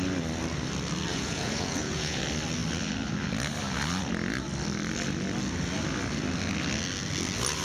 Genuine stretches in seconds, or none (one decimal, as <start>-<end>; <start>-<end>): 0.0-1.1; 2.2-7.6